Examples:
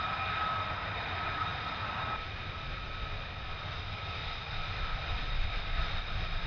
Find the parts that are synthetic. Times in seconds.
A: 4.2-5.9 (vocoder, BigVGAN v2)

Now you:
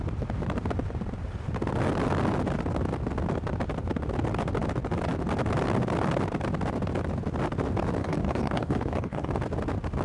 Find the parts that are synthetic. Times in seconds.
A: 8.0-9.3 (codec, DAC)

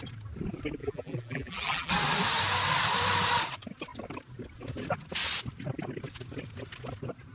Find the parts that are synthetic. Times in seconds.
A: 0.8-1.9 (vocoder, BigVGAN v2)